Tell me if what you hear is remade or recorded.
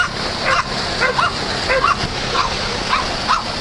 recorded